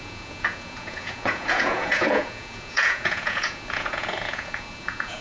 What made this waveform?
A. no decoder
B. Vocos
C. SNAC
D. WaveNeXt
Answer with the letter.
B